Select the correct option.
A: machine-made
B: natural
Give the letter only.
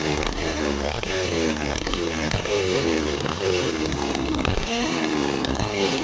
A